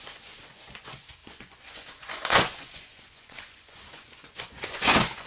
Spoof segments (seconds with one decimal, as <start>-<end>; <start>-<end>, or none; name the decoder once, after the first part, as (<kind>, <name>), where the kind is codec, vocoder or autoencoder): 0.0-5.3 (vocoder, Vocos)